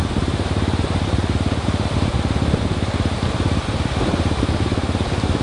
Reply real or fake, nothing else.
fake